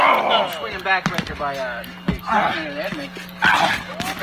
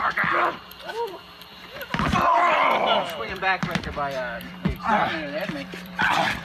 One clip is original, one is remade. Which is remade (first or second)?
second